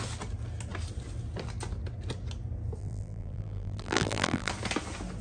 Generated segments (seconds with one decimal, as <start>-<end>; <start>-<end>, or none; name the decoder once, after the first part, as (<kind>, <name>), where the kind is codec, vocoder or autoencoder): 2.8-4.5 (vocoder, BigVGAN v2)